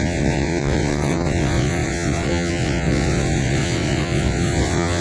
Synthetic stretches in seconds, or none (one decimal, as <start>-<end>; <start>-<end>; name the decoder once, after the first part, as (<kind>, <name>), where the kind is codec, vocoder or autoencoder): 0.0-5.0 (vocoder, WaveNeXt)